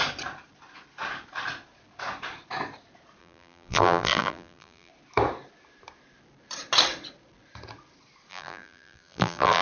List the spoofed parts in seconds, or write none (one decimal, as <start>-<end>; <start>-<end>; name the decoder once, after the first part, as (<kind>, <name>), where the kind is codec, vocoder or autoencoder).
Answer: 3.2-4.9 (vocoder, BigVGAN v2); 8.3-9.6